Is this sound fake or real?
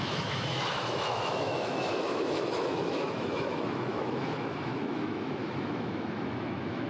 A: fake